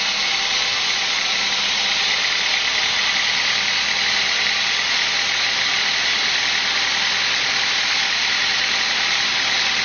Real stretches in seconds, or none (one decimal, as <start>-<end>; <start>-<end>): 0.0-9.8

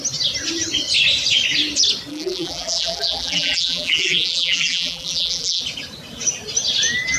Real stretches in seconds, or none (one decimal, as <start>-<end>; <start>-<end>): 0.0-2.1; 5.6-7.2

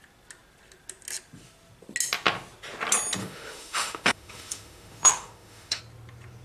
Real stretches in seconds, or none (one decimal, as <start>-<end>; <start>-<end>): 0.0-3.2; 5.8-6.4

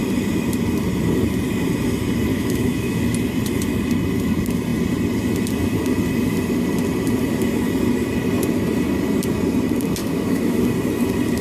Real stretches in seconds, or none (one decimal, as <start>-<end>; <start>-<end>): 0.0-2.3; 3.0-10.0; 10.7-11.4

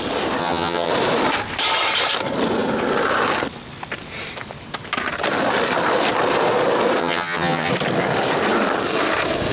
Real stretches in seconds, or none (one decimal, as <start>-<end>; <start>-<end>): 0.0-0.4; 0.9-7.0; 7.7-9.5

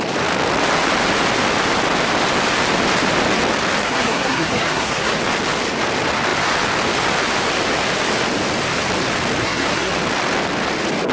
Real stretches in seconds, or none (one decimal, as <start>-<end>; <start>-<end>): 0.0-3.8; 5.2-9.4; 9.9-11.1